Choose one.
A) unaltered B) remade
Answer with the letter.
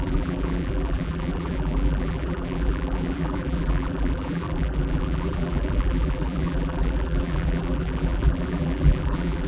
B